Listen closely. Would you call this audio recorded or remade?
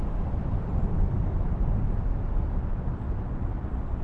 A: recorded